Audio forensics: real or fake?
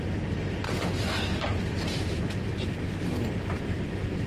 real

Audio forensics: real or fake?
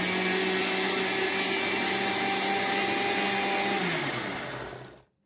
real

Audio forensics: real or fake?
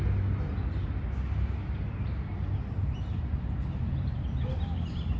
real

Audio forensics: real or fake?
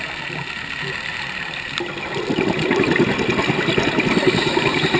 real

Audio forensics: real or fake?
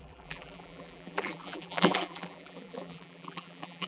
fake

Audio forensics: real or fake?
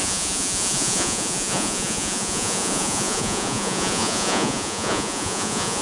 fake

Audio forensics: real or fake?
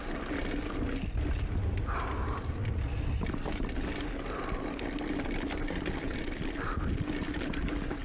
real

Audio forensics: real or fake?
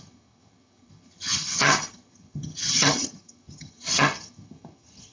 fake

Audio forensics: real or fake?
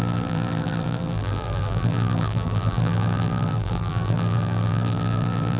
fake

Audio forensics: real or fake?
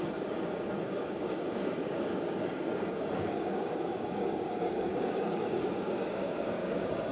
fake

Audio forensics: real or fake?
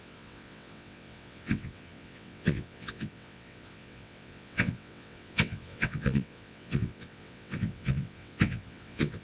fake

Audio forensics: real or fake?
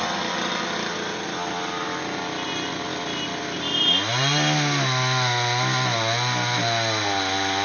real